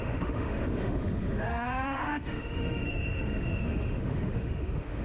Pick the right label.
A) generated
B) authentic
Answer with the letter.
A